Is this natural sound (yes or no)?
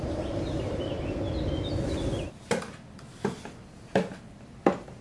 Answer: yes